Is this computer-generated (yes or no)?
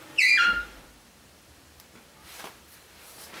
yes